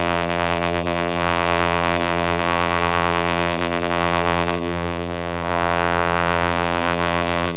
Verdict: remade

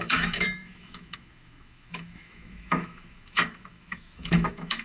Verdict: remade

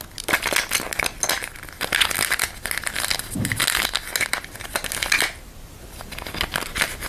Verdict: recorded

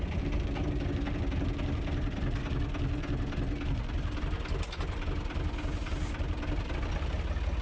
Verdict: recorded